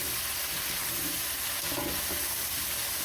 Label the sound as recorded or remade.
recorded